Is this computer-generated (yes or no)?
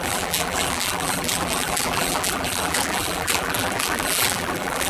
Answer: yes